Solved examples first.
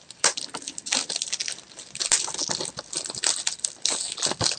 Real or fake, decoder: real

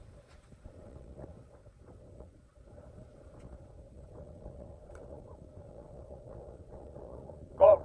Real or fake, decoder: fake, vocoder, Vocos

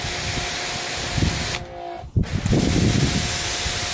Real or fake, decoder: real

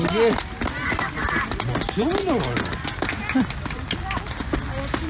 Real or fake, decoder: real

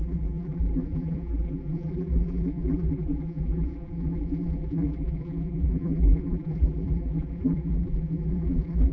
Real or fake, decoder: fake, vocoder, BigVGAN v2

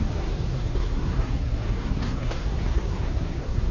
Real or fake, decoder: fake, codec, SNAC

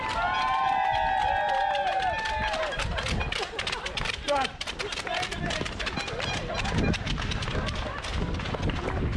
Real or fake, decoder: real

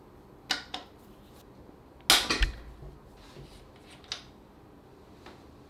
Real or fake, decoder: real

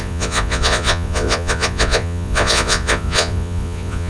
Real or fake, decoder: fake, vocoder, Vocos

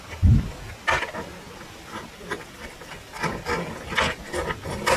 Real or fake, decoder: real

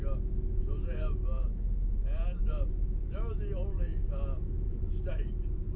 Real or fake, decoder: real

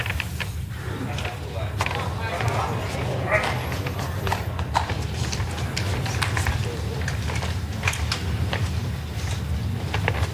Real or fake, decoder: real